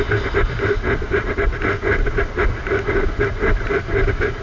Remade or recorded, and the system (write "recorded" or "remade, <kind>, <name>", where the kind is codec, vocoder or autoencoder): recorded